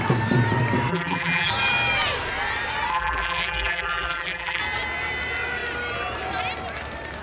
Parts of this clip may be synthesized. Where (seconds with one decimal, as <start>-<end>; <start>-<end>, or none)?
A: 0.9-1.5; 2.9-4.6